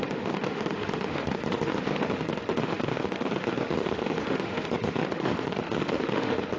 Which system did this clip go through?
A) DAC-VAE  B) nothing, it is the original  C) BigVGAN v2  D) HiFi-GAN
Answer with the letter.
A